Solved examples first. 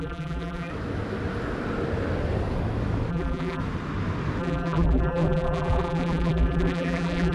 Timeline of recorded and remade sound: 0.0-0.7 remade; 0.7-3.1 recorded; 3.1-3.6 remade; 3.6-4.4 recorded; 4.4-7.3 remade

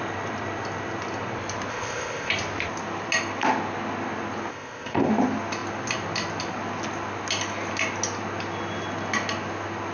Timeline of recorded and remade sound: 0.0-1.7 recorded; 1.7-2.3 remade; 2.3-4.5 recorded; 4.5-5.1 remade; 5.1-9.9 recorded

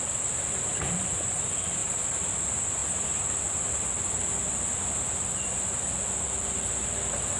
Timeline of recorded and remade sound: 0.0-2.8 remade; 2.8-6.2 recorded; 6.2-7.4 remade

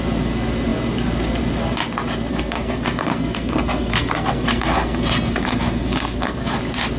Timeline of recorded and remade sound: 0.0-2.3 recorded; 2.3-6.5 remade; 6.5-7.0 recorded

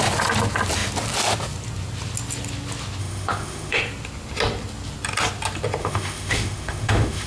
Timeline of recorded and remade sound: 0.0-3.0 recorded; 3.0-3.8 remade; 3.8-5.8 recorded; 5.8-7.3 remade

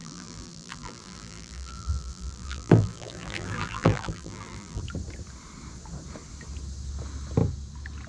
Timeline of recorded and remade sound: 0.0-4.8 remade; 4.8-8.1 recorded

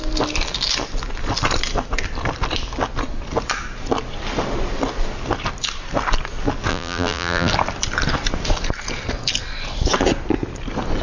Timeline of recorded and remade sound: 0.0-6.7 recorded; 6.7-7.5 remade; 7.5-11.0 recorded

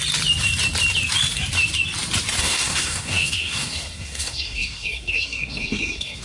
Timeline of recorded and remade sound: 0.0-2.4 recorded; 2.4-6.2 remade